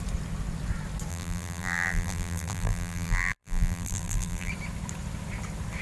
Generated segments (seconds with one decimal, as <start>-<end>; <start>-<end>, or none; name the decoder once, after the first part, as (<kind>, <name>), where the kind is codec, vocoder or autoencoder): 1.1-4.5 (vocoder, BigVGAN v2)